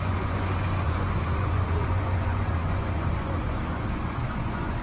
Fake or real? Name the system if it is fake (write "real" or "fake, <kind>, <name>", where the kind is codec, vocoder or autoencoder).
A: fake, vocoder, Vocos